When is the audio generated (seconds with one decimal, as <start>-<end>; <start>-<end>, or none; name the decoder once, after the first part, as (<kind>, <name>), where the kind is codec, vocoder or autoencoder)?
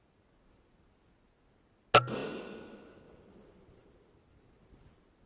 none